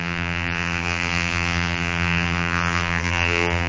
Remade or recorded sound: remade